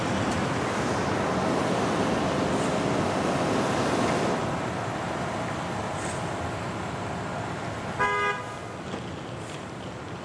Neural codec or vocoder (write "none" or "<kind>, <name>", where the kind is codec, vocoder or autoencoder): none